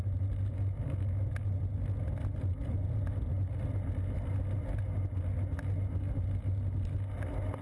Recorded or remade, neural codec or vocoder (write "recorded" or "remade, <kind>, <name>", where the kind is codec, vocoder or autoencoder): recorded